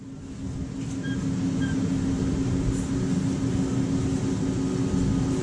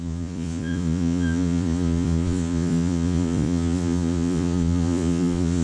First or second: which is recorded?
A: first